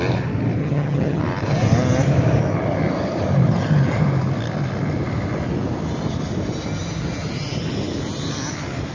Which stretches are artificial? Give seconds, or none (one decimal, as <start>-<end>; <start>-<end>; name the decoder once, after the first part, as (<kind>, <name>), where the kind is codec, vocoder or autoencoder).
0.6-1.2 (vocoder, HiFi-GAN)

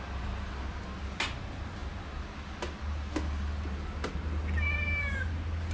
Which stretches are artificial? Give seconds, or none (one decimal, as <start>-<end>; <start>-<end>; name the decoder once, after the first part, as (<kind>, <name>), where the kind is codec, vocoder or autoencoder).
none

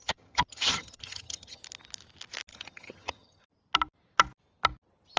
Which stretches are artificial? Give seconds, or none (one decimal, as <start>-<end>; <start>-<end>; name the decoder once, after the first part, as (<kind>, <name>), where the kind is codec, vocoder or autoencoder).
0.0-1.6 (vocoder, HiFi-GAN); 2.5-3.4

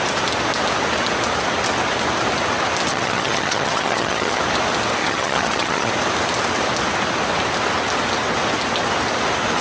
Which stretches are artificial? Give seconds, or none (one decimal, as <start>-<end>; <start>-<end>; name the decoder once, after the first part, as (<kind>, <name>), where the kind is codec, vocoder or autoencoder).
2.9-4.4 (vocoder, HiFi-GAN); 5.0-5.9

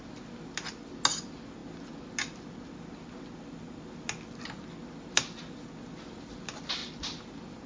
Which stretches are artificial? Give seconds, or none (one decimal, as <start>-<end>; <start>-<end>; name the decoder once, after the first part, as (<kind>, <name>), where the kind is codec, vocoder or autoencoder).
none